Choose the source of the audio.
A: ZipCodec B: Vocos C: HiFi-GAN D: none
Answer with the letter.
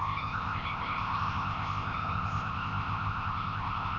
A